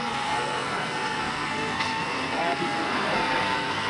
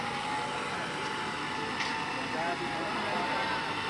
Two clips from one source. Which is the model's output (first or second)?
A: first